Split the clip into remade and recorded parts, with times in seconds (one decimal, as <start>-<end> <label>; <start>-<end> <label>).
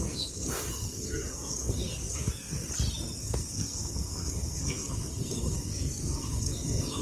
0.0-2.7 remade; 2.7-3.2 recorded; 3.2-7.0 remade